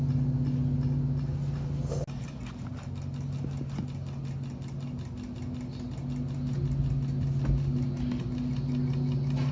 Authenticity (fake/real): real